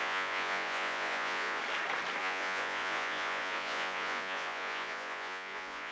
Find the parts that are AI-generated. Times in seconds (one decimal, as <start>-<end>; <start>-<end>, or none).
0.0-1.6; 2.2-5.9